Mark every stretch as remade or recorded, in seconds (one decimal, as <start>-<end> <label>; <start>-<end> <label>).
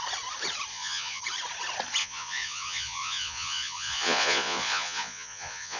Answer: 0.0-0.7 recorded; 0.7-1.2 remade; 1.2-2.0 recorded; 2.0-5.8 remade